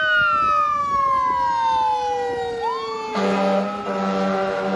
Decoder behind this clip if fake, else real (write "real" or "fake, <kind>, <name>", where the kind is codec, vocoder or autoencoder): real